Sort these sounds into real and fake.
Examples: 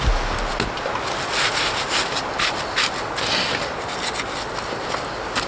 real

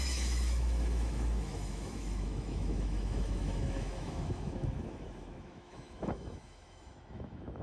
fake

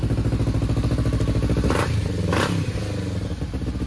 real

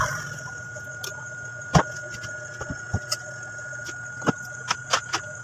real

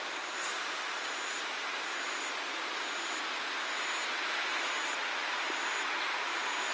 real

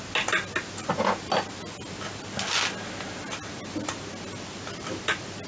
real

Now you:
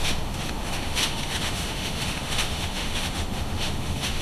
fake